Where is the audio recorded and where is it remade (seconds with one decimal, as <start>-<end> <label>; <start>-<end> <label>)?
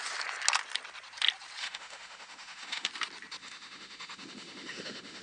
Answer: 0.0-1.6 recorded; 1.6-2.9 remade; 2.9-3.4 recorded; 3.4-5.2 remade